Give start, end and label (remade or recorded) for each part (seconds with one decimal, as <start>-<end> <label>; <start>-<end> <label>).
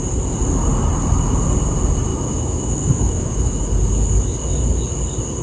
0.0-2.1 recorded; 2.1-3.6 remade; 3.6-5.4 recorded